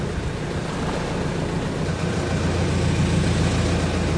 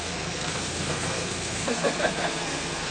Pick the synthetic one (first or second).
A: second